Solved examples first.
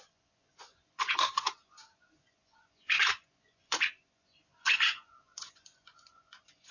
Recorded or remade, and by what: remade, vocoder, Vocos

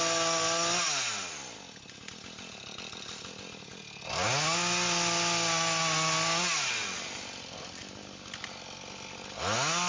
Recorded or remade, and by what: recorded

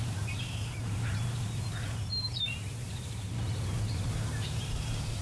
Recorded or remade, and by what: remade, vocoder, BigVGAN v2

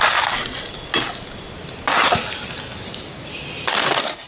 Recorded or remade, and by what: recorded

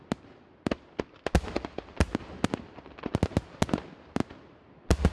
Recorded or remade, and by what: recorded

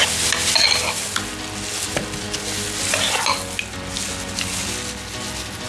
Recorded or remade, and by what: recorded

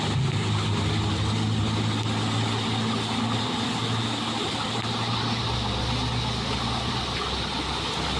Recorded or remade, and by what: recorded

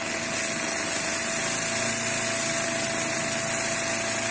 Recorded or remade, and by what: recorded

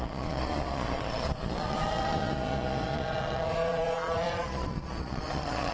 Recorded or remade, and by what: remade, vocoder, Vocos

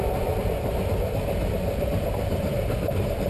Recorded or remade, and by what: recorded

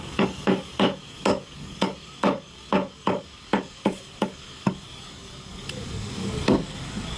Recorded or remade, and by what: remade, codec, DAC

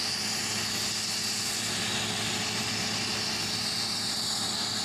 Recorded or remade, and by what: recorded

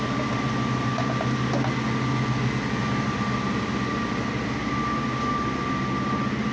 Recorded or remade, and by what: recorded